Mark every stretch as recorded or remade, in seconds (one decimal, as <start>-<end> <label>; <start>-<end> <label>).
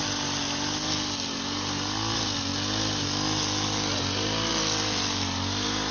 0.0-5.9 recorded